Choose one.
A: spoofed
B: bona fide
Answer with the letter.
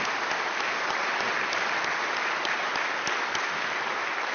A